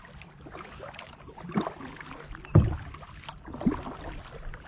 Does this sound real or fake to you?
real